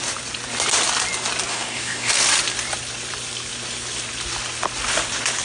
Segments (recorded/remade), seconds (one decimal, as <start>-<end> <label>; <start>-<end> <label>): 0.0-1.5 recorded; 1.5-2.1 remade; 2.1-5.4 recorded